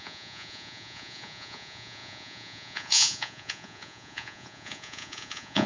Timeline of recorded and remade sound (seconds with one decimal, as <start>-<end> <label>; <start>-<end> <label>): 0.0-5.7 remade